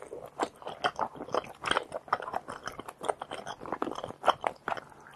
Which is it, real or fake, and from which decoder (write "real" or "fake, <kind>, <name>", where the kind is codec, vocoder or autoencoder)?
real